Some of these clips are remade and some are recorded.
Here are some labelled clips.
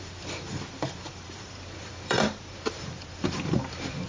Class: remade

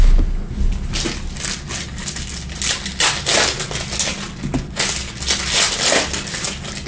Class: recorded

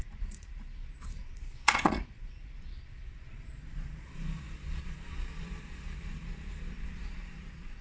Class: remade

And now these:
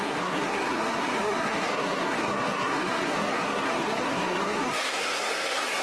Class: remade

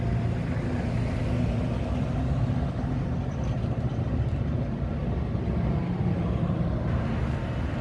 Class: recorded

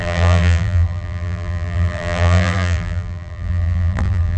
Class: remade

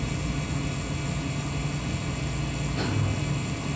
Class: recorded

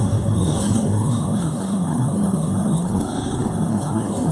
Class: remade